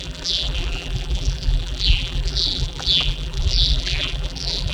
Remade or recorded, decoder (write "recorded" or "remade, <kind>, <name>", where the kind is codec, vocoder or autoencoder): remade, vocoder, BigVGAN v2